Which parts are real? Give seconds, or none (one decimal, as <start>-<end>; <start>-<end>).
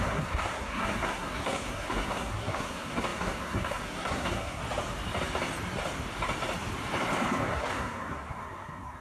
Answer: 4.6-7.4